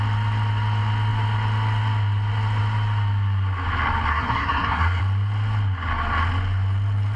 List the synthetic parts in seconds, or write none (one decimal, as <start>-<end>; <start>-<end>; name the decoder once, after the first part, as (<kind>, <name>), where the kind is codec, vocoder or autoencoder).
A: 4.1-5.0 (codec, SNAC)